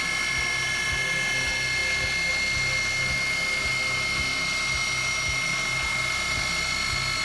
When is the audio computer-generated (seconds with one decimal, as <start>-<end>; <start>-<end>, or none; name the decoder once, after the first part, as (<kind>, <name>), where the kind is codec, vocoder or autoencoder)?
none